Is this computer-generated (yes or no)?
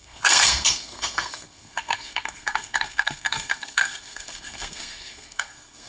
yes